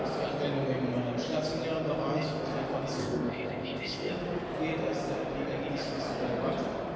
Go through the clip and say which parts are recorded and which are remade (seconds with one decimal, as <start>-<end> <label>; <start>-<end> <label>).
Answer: 0.0-3.0 recorded; 3.0-4.1 remade; 4.1-7.0 recorded